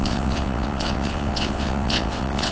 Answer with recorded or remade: remade